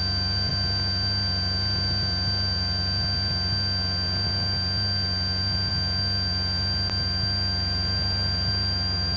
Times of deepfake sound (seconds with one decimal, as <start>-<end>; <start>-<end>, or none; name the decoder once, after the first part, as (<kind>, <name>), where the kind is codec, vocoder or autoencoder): none